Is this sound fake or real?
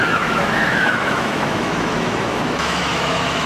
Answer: fake